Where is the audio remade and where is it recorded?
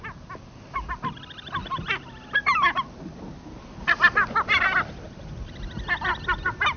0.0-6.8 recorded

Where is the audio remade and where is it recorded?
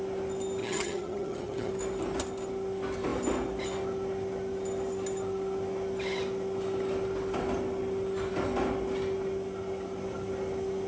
0.0-0.6 recorded; 0.6-1.7 remade; 1.7-10.9 recorded